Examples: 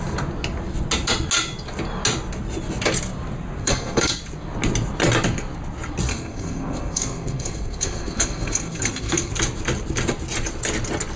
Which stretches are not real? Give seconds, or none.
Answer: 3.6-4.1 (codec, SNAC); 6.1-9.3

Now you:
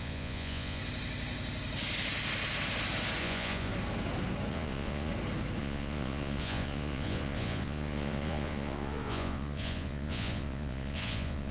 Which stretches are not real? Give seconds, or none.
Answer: 0.0-0.8 (vocoder, Vocos); 3.2-3.7; 4.5-5.1; 5.6-11.5

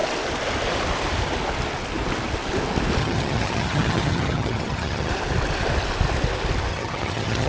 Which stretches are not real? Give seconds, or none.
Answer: 3.0-5.1 (vocoder, HiFi-GAN); 6.7-7.5

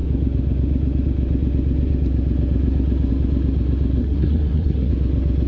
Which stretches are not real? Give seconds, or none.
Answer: 4.0-4.9 (codec, SNAC)

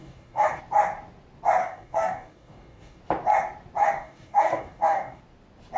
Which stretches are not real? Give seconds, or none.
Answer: 0.0-0.6 (codec, DAC); 1.6-3.0; 3.8-5.2